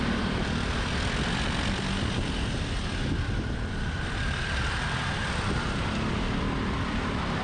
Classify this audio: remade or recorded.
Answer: remade